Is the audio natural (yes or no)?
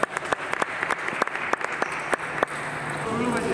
yes